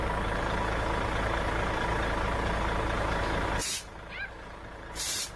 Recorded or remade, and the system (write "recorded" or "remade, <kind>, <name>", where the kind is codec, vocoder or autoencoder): remade, vocoder, BigVGAN v2